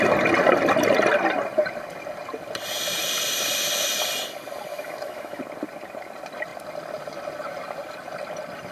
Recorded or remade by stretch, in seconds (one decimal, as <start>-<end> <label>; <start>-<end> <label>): 0.0-4.7 recorded; 4.7-5.4 remade; 5.4-8.7 recorded